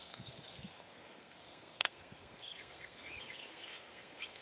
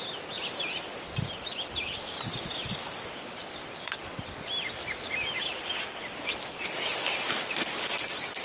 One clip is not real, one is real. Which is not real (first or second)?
first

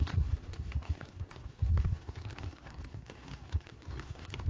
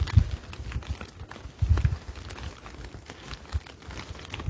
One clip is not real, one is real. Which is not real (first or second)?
first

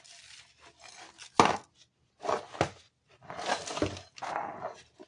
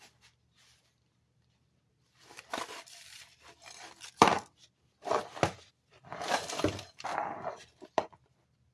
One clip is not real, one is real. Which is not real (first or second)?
second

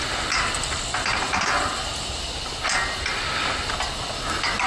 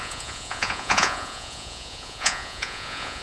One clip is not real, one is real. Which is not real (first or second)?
second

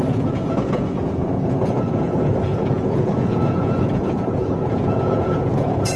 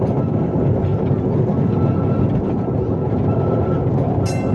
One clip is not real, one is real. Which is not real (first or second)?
first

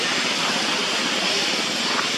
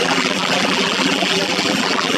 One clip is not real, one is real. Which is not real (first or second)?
second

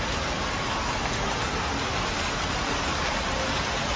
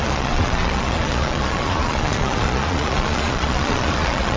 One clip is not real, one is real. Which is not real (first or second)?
second